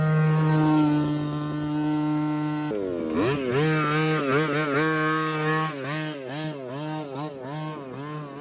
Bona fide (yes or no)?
yes